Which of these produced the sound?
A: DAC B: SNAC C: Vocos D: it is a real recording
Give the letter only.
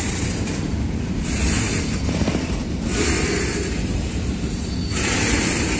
D